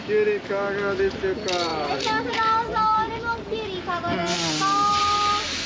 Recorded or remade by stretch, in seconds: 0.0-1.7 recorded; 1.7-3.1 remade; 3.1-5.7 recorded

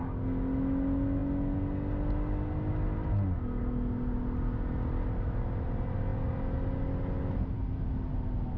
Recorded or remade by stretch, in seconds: 0.0-8.6 recorded

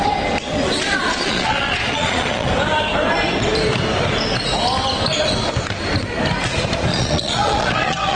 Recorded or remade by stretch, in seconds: 0.0-1.1 recorded; 1.1-2.5 remade; 2.5-6.9 recorded; 6.9-8.2 remade

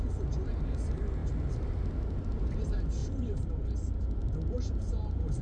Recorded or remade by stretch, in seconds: 0.0-3.0 recorded; 3.0-3.5 remade; 3.5-4.2 recorded; 4.2-5.4 remade

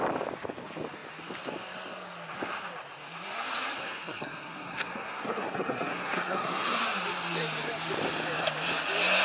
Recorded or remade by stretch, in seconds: 0.0-3.8 recorded; 3.8-6.8 remade; 6.8-9.2 recorded

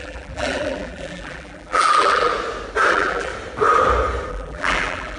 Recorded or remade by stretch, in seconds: 0.0-2.3 remade; 2.3-2.9 recorded; 2.9-3.3 remade; 3.3-4.3 recorded; 4.3-5.2 remade